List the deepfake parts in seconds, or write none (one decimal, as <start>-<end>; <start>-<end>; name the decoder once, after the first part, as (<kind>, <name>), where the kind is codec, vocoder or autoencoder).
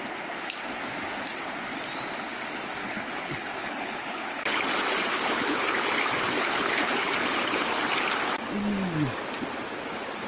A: 2.8-4.6 (codec, HILCodec); 5.1-7.8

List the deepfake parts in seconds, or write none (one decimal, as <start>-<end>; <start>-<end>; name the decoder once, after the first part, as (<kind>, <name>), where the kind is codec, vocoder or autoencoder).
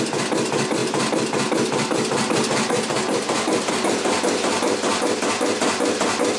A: none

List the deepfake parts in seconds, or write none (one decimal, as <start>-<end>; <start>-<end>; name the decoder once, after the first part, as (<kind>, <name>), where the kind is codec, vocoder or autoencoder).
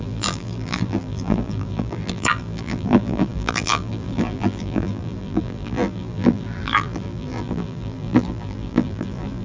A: 0.0-9.4 (vocoder, BigVGAN v2)